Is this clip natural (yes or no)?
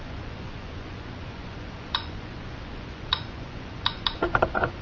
no